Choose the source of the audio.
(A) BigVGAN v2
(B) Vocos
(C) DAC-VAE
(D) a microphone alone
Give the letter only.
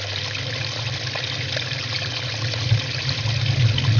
D